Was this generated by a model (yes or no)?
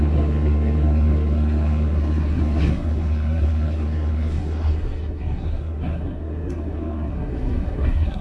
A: yes